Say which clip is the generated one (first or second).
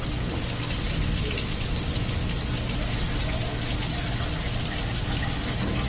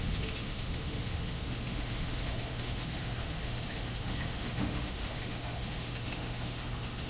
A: second